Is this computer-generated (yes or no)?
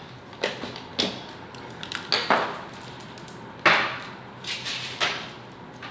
no